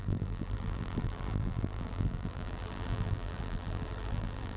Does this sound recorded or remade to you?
remade